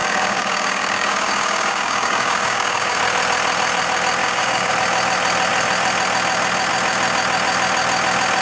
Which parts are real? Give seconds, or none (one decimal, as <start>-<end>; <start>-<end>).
3.0-4.2; 4.7-8.4